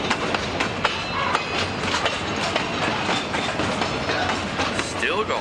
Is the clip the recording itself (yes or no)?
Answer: yes